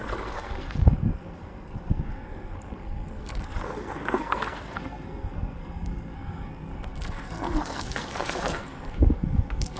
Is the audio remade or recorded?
remade